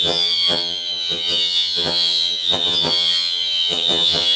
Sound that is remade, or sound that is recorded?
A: remade